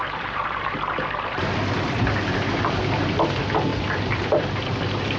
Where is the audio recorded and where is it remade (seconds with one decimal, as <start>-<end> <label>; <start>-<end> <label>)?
0.0-3.1 remade; 3.1-3.7 recorded; 3.7-5.2 remade